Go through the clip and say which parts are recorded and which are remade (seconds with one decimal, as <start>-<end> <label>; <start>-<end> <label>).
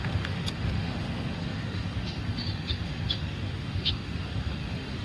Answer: 0.0-5.0 remade